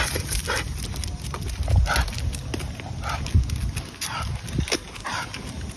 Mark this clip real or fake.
real